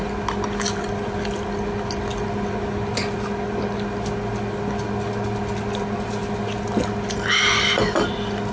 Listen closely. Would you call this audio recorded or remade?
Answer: recorded